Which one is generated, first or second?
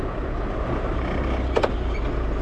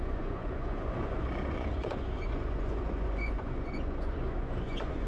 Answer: second